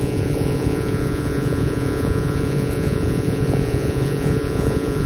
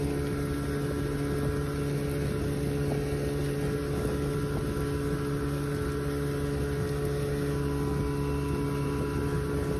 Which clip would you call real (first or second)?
second